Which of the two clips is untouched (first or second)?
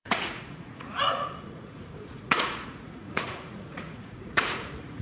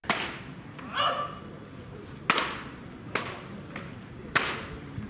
second